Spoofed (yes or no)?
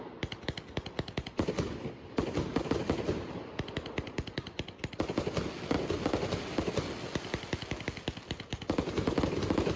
no